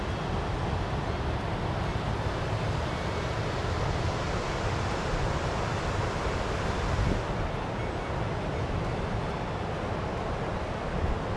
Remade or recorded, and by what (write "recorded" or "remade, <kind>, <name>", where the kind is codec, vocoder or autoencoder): recorded